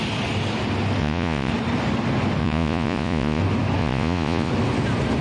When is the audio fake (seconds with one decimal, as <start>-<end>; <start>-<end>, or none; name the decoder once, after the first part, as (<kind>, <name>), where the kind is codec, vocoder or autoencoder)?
1.0-1.5 (vocoder, Vocos); 2.4-3.4; 3.8-4.5